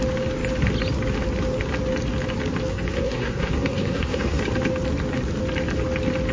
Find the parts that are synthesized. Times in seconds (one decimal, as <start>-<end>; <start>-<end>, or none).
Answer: 2.7-4.4